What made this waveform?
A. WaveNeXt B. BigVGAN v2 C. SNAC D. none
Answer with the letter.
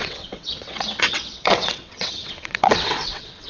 A